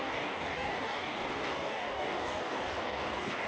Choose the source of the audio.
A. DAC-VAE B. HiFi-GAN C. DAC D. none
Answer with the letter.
C